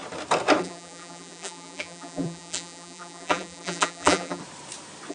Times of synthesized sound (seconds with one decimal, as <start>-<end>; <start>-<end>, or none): 0.6-4.4